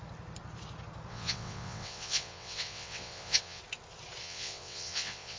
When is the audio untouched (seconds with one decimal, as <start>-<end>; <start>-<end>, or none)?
0.0-1.1; 3.6-4.2